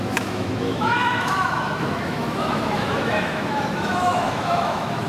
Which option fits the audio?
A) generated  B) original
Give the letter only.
A